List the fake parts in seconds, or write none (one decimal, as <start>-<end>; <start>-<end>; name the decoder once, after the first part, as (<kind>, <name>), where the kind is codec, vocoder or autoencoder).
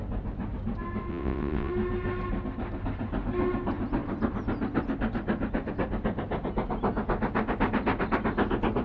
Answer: 1.1-1.7 (vocoder, WaveNeXt)